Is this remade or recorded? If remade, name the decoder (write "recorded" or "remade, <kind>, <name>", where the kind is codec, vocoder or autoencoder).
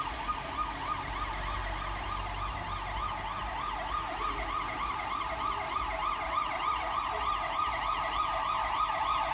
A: recorded